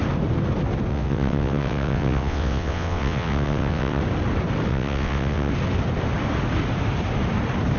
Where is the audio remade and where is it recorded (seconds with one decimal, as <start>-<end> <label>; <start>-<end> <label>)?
0.0-0.9 recorded; 0.9-4.0 remade; 4.0-4.7 recorded; 4.7-5.5 remade; 5.5-7.8 recorded